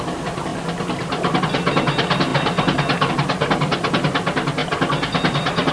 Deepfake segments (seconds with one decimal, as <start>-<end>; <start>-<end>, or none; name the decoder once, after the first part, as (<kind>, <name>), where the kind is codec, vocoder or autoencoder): 0.0-0.5 (vocoder, BigVGAN v2); 1.4-2.3; 3.1-4.6